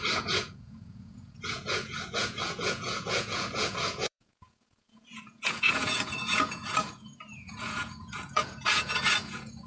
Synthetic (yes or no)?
yes